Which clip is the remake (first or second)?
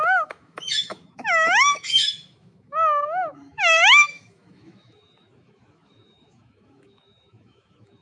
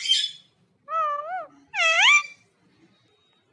first